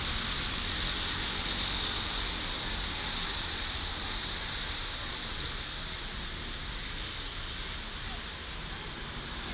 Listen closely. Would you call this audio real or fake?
real